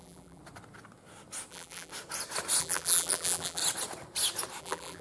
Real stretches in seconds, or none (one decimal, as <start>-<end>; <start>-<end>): 0.4-1.5; 1.9-2.6; 3.6-4.6